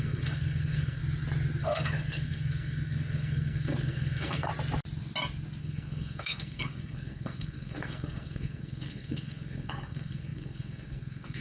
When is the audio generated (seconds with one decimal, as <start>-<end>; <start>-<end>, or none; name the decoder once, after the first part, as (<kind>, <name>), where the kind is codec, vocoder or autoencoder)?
0.0-1.0 (codec, SNAC); 1.6-4.5; 5.6-11.4